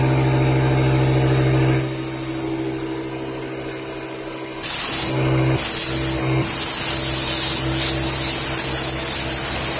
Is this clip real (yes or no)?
yes